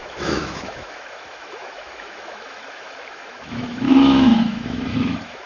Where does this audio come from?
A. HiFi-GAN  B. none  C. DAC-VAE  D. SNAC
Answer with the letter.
C